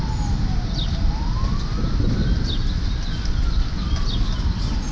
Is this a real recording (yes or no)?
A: yes